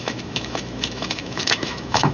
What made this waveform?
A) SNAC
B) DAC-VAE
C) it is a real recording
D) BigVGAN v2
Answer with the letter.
B